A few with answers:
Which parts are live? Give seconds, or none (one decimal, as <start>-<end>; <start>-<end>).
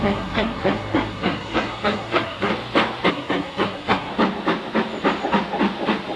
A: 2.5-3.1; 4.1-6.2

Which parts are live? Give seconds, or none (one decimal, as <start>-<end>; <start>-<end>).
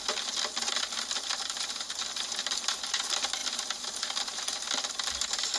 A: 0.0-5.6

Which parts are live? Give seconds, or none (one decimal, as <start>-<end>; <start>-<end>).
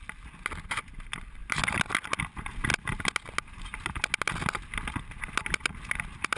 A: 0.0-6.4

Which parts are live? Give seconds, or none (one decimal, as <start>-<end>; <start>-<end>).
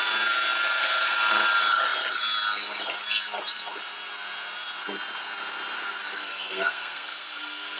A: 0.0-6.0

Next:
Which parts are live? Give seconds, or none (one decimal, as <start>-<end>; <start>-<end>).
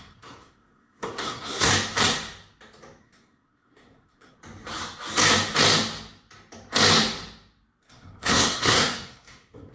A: 1.7-3.0; 4.4-7.8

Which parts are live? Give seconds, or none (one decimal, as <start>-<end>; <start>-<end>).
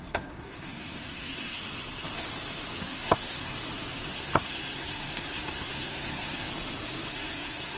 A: 1.6-2.8; 3.5-4.1; 6.5-7.1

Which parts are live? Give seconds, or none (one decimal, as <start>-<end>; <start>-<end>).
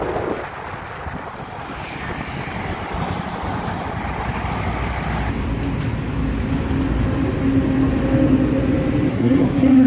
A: 0.0-9.1